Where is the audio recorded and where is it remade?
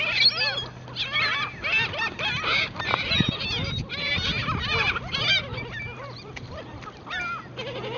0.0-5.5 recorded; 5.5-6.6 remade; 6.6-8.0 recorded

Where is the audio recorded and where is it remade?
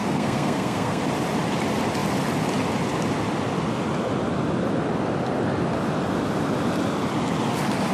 0.0-1.0 remade; 1.0-7.9 recorded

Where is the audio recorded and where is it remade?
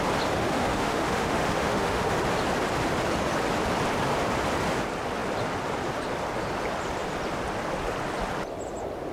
0.0-0.4 recorded; 0.4-2.2 remade; 2.2-9.1 recorded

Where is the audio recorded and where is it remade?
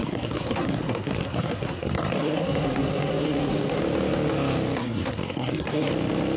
0.0-3.8 remade; 3.8-4.8 recorded; 4.8-5.9 remade; 5.9-6.4 recorded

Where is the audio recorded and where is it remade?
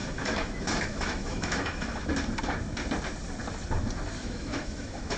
0.0-2.1 remade; 2.1-4.2 recorded; 4.2-5.2 remade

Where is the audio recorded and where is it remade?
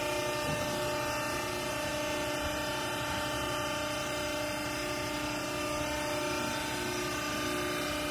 0.0-8.1 recorded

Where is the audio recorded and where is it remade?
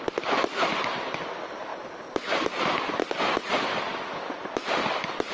0.0-5.3 recorded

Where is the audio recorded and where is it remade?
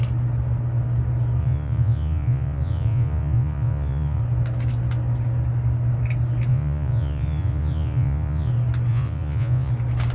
0.0-1.4 recorded; 1.4-4.2 remade; 4.2-6.5 recorded; 6.5-8.5 remade; 8.5-8.9 recorded; 8.9-9.7 remade; 9.7-10.1 recorded